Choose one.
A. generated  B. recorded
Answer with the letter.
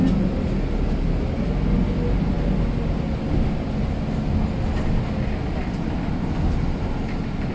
B